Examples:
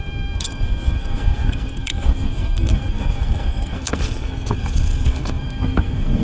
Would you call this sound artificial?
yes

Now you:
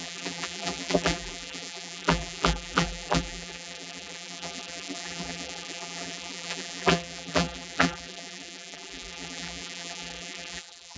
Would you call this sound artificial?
yes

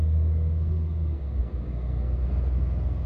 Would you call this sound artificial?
yes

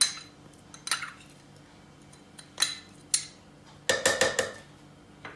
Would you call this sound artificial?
no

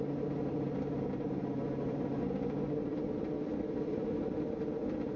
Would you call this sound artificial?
yes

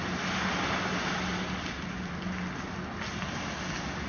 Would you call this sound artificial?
no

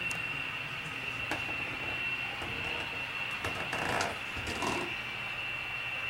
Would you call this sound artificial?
no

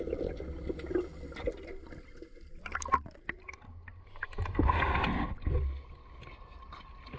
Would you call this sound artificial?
no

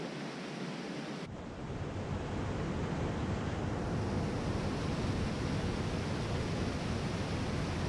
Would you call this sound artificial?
no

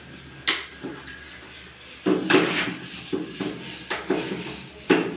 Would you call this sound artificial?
no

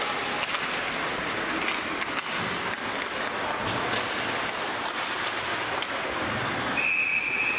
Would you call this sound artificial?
no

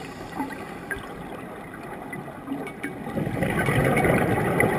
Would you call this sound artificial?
no